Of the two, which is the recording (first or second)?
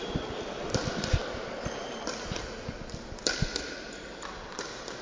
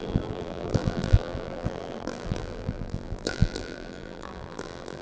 first